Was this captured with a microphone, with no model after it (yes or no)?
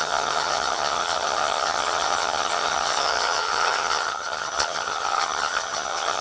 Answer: no